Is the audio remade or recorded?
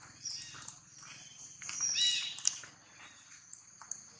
recorded